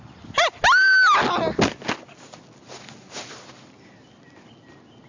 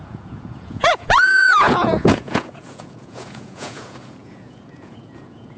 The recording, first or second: first